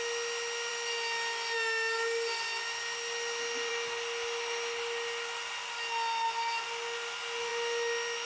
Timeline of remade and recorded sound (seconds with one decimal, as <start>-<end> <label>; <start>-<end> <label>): 0.0-8.3 recorded

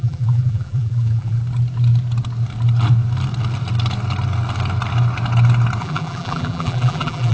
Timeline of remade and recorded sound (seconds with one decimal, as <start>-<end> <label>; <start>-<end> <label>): 0.0-1.4 remade; 1.4-5.8 recorded; 5.8-7.3 remade

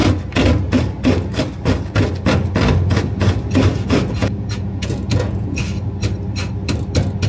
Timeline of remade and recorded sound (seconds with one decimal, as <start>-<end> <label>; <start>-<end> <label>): 0.0-4.2 recorded; 4.2-5.6 remade; 5.6-7.3 recorded

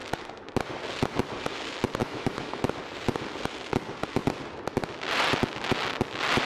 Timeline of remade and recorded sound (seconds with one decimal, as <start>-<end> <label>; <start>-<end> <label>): 0.0-2.0 recorded; 2.0-2.6 remade; 2.6-6.5 recorded

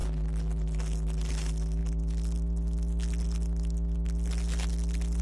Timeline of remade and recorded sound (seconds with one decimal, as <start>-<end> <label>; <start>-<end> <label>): 0.0-5.2 recorded